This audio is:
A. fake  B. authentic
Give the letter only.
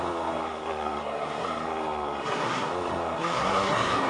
A